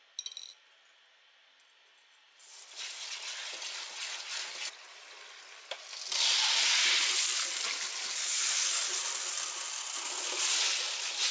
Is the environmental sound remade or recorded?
recorded